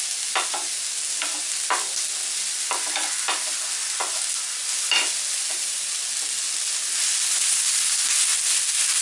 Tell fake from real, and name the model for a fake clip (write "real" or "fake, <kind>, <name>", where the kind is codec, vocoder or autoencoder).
real